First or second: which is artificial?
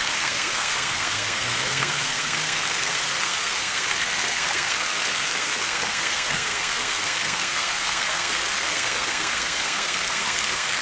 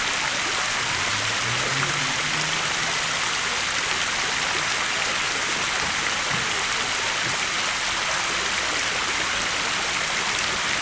first